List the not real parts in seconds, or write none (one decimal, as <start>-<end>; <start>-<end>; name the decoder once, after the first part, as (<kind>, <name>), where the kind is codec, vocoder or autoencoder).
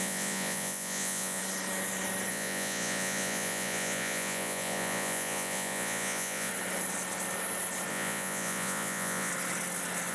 0.0-1.4 (vocoder, Vocos); 2.3-6.5; 7.9-9.3